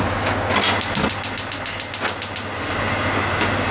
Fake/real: real